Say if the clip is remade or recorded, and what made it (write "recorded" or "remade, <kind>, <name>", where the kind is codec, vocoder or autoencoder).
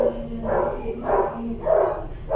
recorded